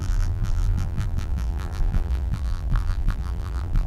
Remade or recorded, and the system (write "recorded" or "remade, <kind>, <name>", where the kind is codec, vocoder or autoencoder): remade, vocoder, BigVGAN v2